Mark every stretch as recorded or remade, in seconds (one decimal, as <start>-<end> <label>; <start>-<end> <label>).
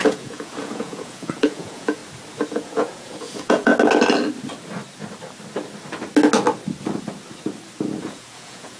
0.0-2.0 remade; 2.0-2.5 recorded; 2.5-3.7 remade; 3.7-8.0 recorded; 8.0-8.8 remade